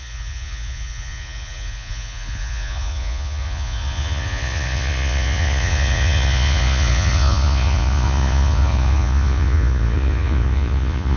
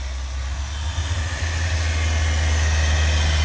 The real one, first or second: second